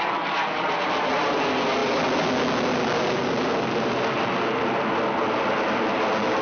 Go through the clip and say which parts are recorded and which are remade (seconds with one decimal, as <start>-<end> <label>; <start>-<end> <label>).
0.0-6.4 recorded

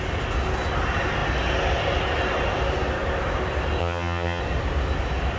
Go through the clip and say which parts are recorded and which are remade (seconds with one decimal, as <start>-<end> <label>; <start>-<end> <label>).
0.0-3.8 recorded; 3.8-4.4 remade; 4.4-5.4 recorded

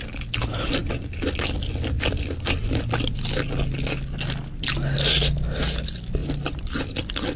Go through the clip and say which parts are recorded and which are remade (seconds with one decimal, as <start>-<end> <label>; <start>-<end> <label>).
0.0-7.4 recorded

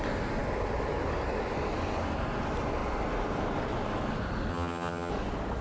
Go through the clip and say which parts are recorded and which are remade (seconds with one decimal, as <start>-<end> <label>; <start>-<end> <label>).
0.0-4.5 recorded; 4.5-5.1 remade; 5.1-5.6 recorded

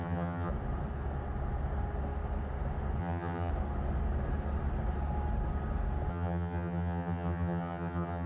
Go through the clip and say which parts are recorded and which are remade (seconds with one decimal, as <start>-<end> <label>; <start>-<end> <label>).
0.0-0.5 remade; 0.5-3.0 recorded; 3.0-3.5 remade; 3.5-6.1 recorded; 6.1-8.3 remade

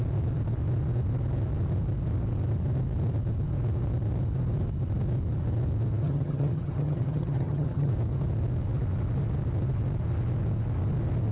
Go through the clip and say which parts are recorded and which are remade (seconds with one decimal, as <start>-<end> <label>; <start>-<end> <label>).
0.0-6.0 recorded; 6.0-7.9 remade; 7.9-11.3 recorded

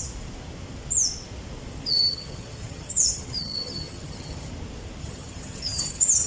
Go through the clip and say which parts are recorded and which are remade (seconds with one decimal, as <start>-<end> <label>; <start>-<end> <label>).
0.0-1.9 recorded; 1.9-4.5 remade; 4.5-5.0 recorded; 5.0-6.3 remade

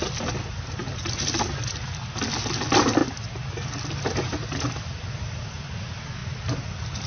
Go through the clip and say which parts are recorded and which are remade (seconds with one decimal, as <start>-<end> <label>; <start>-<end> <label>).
0.0-7.1 recorded